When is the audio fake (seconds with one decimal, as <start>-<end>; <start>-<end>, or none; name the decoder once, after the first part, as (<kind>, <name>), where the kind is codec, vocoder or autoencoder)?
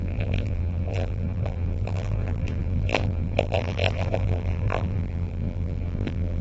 0.0-6.4 (vocoder, BigVGAN v2)